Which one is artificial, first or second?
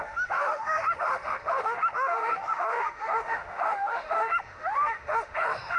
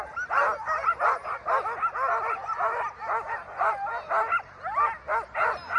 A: first